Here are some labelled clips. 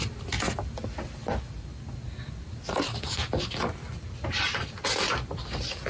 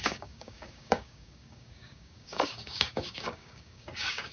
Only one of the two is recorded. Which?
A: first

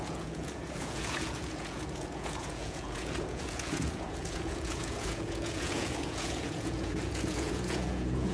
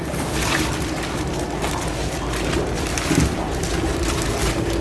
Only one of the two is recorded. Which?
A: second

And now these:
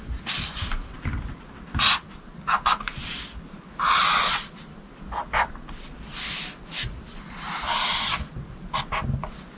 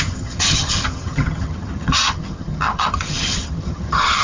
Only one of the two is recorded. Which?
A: first